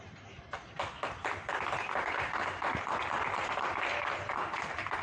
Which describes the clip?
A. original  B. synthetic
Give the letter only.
A